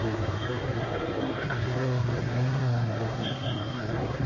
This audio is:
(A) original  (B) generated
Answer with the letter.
B